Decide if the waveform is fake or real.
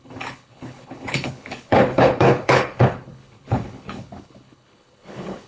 fake